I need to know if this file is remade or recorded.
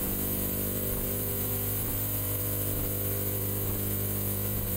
remade